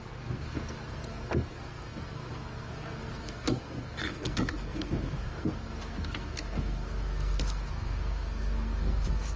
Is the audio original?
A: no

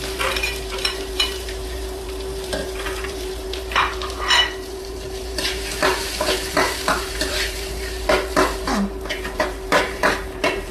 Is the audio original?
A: no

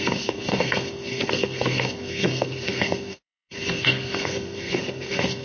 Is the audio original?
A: no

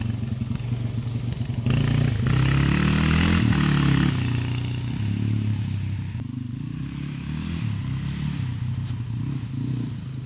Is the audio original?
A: yes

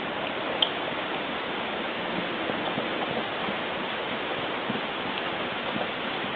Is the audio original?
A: yes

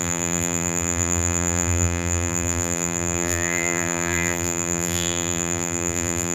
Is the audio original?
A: no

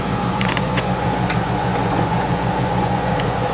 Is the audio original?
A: no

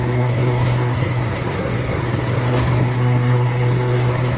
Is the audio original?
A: no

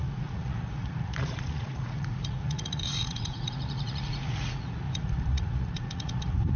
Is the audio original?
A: no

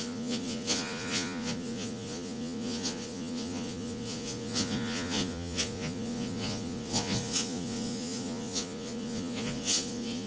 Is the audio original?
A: no